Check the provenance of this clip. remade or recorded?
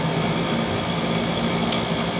recorded